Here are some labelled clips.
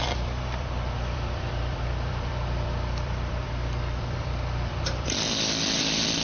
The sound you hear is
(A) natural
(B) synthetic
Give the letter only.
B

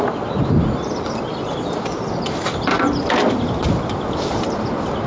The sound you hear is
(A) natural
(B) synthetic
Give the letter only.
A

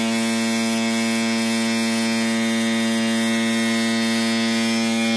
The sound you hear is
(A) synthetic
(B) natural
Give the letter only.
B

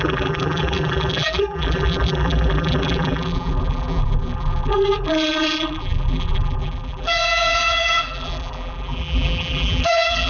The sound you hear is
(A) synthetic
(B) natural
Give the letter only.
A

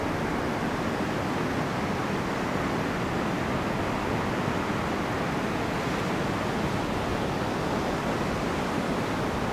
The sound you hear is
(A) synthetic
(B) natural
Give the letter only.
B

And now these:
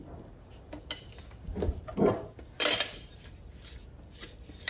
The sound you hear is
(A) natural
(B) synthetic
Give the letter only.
A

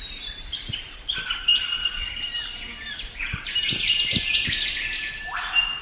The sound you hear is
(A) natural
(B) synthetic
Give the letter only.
B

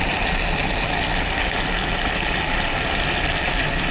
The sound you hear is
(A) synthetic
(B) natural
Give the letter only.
B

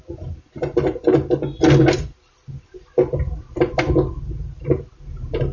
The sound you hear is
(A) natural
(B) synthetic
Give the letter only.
A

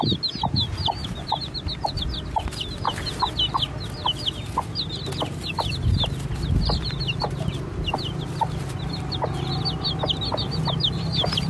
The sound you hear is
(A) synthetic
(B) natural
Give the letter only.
B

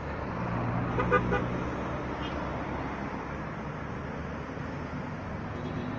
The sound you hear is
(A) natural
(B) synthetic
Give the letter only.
A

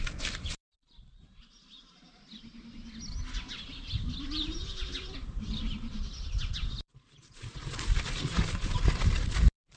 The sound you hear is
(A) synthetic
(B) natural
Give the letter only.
A